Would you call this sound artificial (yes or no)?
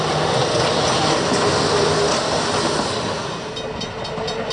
no